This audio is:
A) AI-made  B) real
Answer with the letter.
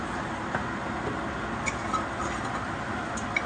B